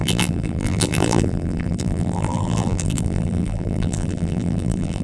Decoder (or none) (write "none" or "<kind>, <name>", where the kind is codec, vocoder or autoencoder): vocoder, BigVGAN v2